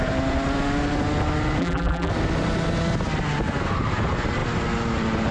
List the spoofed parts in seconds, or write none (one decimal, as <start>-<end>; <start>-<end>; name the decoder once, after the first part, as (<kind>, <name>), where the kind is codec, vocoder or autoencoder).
1.6-2.1 (vocoder, BigVGAN v2)